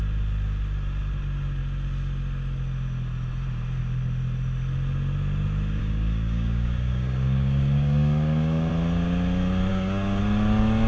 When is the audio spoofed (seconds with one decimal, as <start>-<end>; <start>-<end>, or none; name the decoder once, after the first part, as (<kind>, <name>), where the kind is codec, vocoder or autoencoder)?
5.8-8.7 (codec, DAC); 9.7-10.2